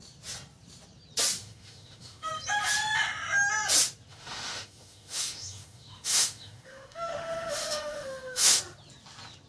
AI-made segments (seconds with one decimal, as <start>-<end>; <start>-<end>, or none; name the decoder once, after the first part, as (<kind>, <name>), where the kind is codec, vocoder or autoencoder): 1.4-2.3 (autoencoder, DAC-VAE); 4.1-8.6